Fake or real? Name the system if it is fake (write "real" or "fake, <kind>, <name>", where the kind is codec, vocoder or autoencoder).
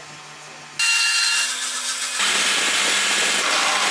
real